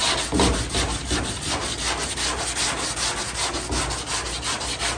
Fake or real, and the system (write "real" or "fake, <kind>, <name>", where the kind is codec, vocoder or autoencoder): real